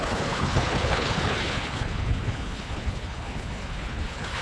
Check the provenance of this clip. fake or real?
fake